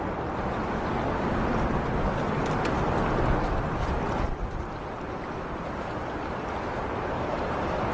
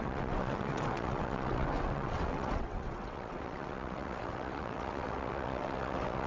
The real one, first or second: first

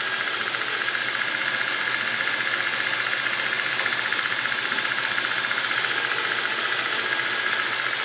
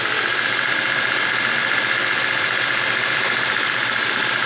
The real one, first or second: first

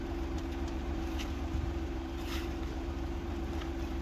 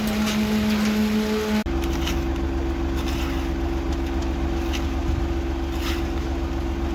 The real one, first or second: second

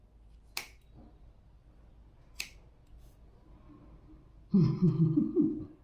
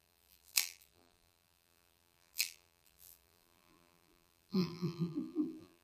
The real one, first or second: first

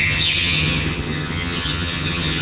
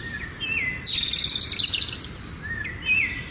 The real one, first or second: second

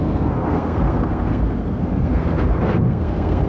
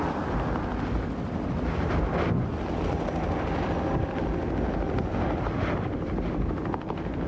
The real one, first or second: second